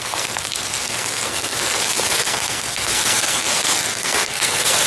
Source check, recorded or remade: remade